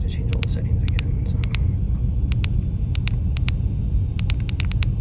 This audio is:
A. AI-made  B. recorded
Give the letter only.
B